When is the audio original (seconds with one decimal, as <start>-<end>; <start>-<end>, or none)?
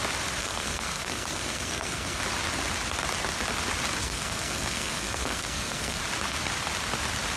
0.0-0.4; 2.2-4.0; 6.0-7.4